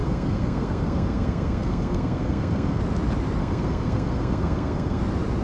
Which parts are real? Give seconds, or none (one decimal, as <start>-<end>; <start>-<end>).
2.8-3.4; 5.0-5.4